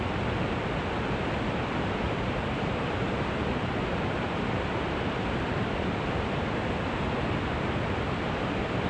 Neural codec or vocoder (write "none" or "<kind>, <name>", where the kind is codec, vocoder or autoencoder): none